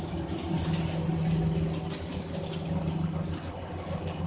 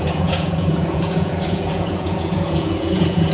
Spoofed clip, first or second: second